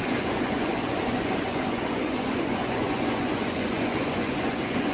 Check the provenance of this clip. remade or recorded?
remade